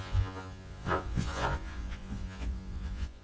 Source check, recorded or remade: remade